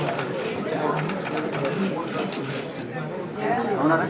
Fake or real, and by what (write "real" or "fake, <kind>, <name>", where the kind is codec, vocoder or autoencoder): real